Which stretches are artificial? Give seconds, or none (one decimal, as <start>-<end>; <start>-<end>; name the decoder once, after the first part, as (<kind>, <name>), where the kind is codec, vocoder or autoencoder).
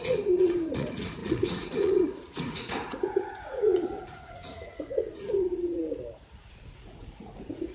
0.0-5.8 (vocoder, Vocos); 6.3-7.7